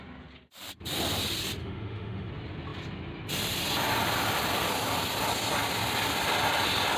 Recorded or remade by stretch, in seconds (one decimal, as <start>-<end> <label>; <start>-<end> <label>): 0.0-1.6 recorded; 1.6-2.3 remade; 2.3-7.0 recorded